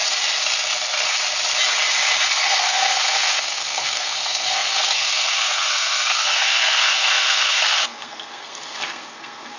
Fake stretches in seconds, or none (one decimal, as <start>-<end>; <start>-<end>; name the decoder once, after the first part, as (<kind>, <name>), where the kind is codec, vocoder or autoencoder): 2.6-9.6 (codec, SNAC)